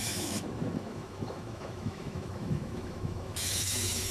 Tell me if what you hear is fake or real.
fake